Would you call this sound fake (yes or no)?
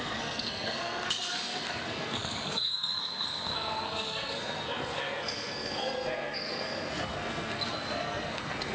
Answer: yes